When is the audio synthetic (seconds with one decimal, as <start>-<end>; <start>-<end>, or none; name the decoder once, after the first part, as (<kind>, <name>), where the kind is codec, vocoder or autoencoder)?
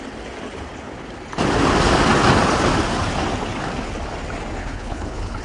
4.6-5.4 (codec, HILCodec)